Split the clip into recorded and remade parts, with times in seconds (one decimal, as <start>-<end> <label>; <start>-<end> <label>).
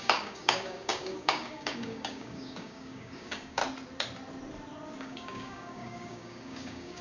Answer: 0.0-3.6 remade; 3.6-5.0 recorded; 5.0-7.0 remade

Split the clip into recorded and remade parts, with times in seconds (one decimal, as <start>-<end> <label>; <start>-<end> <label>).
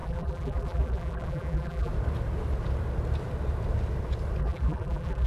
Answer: 0.0-1.9 remade; 1.9-4.4 recorded; 4.4-5.3 remade